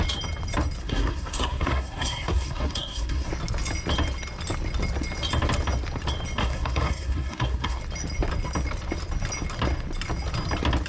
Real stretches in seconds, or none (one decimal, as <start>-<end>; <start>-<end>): 0.0-0.8; 3.3-6.4; 7.8-10.9